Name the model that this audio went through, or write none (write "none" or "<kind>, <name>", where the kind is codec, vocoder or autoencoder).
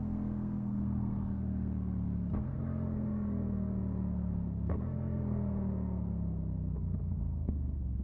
codec, SNAC